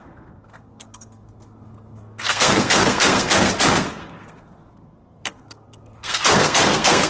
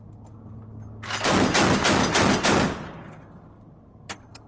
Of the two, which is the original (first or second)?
second